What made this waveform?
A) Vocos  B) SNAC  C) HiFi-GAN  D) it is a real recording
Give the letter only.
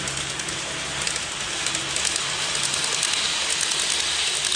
D